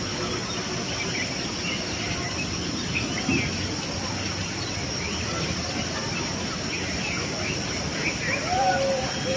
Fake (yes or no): no